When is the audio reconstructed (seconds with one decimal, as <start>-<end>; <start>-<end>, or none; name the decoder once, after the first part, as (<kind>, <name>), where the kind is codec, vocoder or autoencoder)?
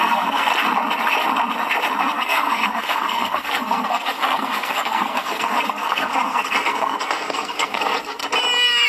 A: 0.0-0.5 (codec, SNAC); 2.0-8.2